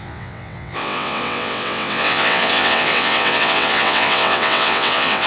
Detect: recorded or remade remade